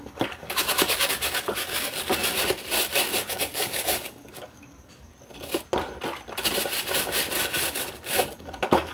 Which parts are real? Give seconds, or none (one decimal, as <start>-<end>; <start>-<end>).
2.1-3.3; 5.1-7.9